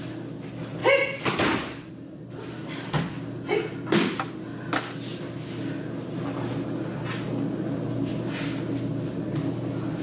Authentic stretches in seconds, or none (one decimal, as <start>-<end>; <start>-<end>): 0.0-10.0